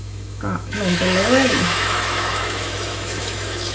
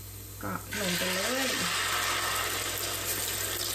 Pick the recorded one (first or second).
second